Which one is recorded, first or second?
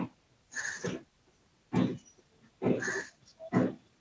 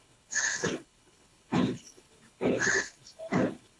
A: first